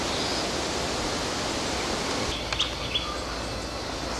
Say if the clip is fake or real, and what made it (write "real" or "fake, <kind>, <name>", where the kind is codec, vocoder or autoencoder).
real